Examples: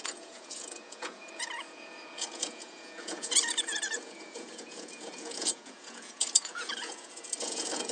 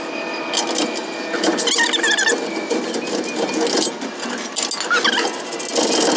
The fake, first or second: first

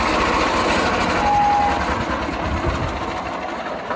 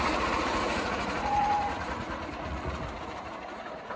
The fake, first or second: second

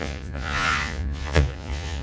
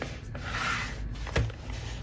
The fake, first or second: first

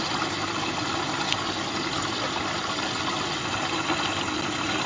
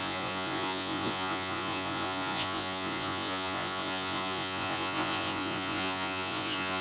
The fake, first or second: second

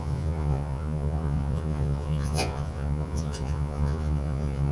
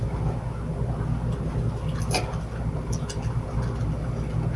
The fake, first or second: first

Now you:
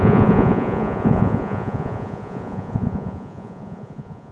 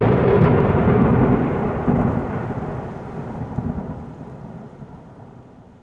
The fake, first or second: first